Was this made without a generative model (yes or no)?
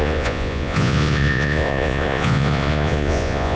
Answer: no